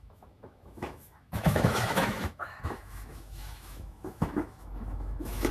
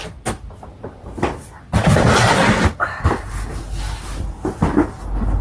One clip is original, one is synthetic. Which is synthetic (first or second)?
first